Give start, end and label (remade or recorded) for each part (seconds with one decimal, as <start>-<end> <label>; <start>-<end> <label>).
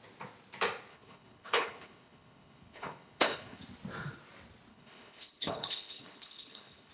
0.0-0.9 recorded; 0.9-3.6 remade; 3.6-4.7 recorded; 4.7-6.9 remade